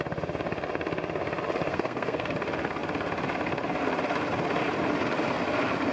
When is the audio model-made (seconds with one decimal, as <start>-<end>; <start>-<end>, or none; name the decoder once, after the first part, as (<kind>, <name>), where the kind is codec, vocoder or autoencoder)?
1.7-2.3 (codec, SNAC)